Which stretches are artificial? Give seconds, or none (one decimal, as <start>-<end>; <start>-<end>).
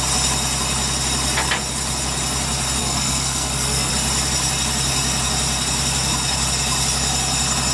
2.8-3.9